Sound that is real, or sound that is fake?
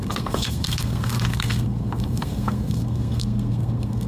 fake